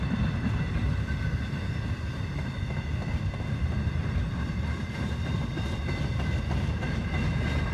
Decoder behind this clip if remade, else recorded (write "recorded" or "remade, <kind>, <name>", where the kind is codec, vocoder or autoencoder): recorded